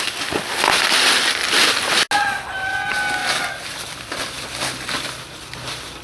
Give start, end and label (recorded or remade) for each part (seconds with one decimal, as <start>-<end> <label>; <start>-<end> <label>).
0.0-6.0 recorded